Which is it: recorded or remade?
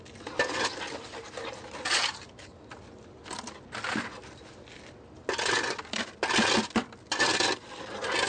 recorded